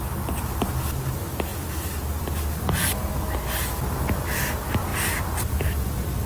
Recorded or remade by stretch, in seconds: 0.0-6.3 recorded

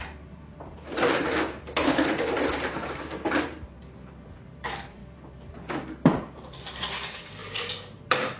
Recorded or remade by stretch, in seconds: 0.0-5.0 remade; 5.0-6.3 recorded; 6.3-8.4 remade

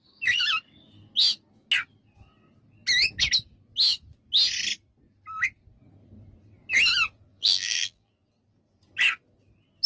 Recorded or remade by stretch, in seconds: 0.0-7.3 recorded; 7.3-8.1 remade; 8.1-9.9 recorded

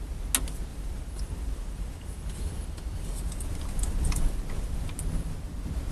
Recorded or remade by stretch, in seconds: 0.0-0.7 recorded; 0.7-4.2 remade; 4.2-5.9 recorded

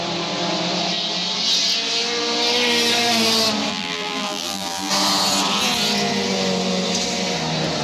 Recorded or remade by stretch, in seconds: 0.0-3.7 recorded; 3.7-4.9 remade; 4.9-7.8 recorded

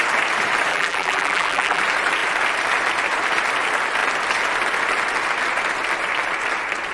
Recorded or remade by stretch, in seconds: 0.0-0.7 recorded; 0.7-1.8 remade; 1.8-6.9 recorded